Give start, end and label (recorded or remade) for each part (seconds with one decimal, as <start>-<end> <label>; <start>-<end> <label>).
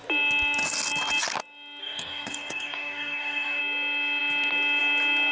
0.0-1.8 recorded; 1.8-3.6 remade; 3.6-5.3 recorded